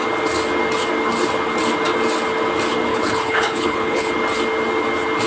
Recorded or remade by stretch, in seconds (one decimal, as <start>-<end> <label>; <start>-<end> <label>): 0.0-2.9 recorded; 2.9-4.1 remade; 4.1-5.3 recorded

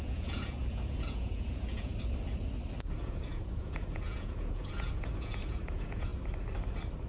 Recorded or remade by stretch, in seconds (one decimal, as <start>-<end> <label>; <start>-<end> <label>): 0.0-1.9 remade; 1.9-2.8 recorded; 2.8-6.1 remade; 6.1-7.1 recorded

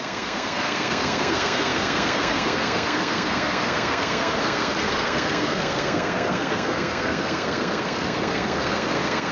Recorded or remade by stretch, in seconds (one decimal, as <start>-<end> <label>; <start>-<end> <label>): 0.0-9.3 remade

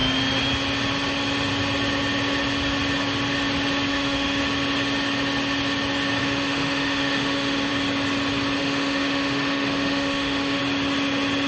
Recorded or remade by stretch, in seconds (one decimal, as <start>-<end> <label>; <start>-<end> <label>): 0.0-3.9 recorded; 3.9-4.4 remade; 4.4-6.2 recorded; 6.2-7.7 remade; 7.7-8.6 recorded; 8.6-10.6 remade; 10.6-11.5 recorded

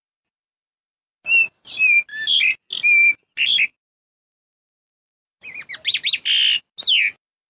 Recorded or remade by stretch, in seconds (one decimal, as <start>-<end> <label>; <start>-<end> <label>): 0.0-7.5 recorded